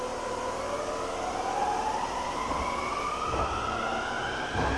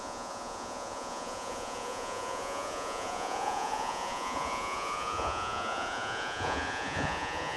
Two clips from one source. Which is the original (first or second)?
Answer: first